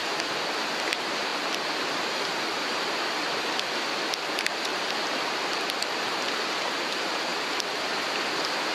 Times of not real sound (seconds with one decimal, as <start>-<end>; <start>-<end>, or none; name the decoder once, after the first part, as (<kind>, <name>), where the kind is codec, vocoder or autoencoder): 0.9-1.3 (vocoder, BigVGAN v2); 4.3-7.3